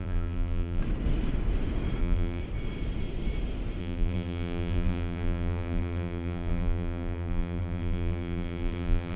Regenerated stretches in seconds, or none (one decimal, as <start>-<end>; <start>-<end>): 0.0-0.8; 2.0-2.4; 3.8-9.2